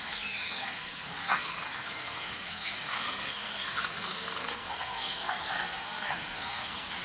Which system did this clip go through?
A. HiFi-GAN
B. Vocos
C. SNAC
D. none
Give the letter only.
C